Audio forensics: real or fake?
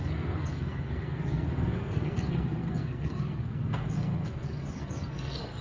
fake